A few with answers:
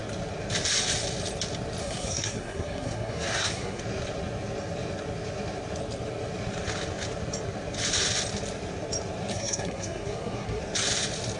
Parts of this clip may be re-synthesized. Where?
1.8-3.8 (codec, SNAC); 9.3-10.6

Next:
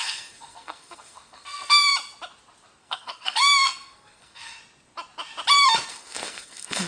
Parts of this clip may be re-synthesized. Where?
0.0-1.9 (codec, SNAC); 2.8-4.6; 5.9-6.9

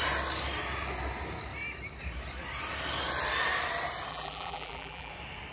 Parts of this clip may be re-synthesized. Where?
4.1-5.1 (vocoder, BigVGAN v2)

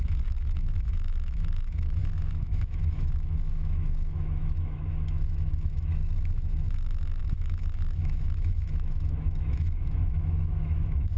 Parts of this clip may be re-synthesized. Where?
0.0-11.2 (autoencoder, DAC-VAE)